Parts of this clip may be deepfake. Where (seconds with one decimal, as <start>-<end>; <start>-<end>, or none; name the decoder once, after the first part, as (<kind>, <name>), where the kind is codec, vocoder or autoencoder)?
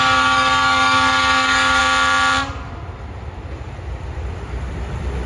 0.0-1.8 (codec, DAC)